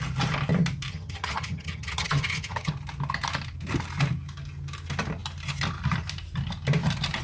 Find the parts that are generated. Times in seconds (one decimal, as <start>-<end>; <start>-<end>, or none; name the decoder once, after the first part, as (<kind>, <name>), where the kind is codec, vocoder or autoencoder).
0.9-2.7 (vocoder, HiFi-GAN)